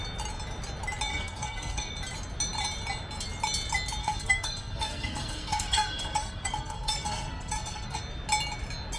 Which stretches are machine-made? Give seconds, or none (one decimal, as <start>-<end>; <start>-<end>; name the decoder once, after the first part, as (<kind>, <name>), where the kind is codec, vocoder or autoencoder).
1.1-1.9 (codec, SNAC); 4.0-8.0